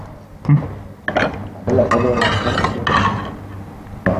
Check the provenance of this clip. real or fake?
real